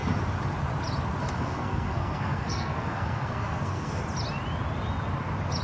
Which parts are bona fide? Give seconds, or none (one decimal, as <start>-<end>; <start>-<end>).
0.0-1.2; 4.0-5.6